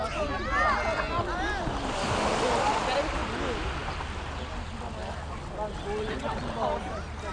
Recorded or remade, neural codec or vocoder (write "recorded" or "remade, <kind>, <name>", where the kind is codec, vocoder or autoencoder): recorded